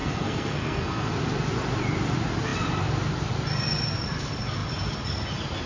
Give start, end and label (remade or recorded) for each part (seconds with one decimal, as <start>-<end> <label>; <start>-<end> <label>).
0.0-1.1 remade; 1.1-5.7 recorded

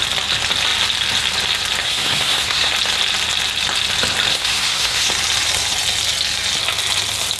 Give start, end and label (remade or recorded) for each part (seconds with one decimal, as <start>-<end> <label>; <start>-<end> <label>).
0.0-1.8 recorded; 1.8-2.7 remade; 2.7-4.3 recorded; 4.3-5.1 remade; 5.1-7.4 recorded

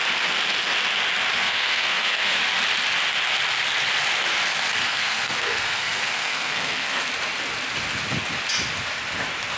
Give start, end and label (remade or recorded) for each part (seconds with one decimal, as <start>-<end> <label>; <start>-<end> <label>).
0.0-1.4 recorded; 1.4-2.4 remade; 2.4-4.8 recorded; 4.8-7.0 remade; 7.0-9.6 recorded

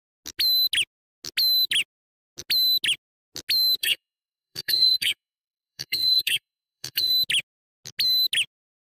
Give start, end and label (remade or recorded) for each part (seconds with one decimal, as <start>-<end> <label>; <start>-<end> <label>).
0.0-3.8 recorded; 3.8-7.1 remade; 7.1-8.8 recorded

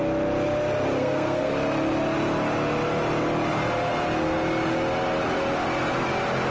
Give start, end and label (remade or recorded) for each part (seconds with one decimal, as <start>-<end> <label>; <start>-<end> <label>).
0.0-1.0 recorded; 1.0-1.5 remade; 1.5-6.5 recorded

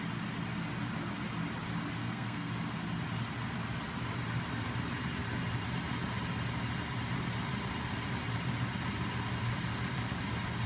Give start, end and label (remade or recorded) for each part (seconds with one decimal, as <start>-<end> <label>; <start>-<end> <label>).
0.0-2.0 recorded; 2.0-2.5 remade; 2.5-10.7 recorded

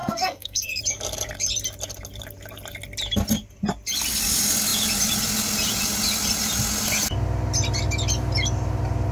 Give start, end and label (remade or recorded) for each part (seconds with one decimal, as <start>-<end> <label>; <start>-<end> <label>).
0.0-0.8 remade; 0.8-9.1 recorded

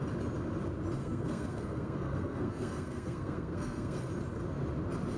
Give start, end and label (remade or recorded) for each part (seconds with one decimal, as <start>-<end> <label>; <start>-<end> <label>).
0.0-1.0 recorded; 1.0-4.1 remade; 4.1-5.2 recorded